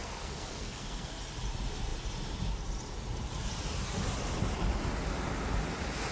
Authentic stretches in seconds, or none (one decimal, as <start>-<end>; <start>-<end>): 1.1-6.1